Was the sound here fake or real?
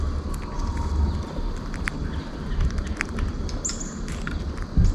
real